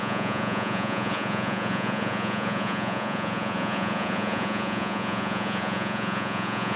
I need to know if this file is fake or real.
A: fake